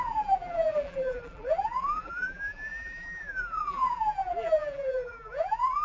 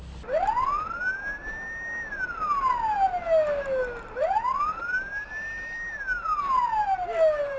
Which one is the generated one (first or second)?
first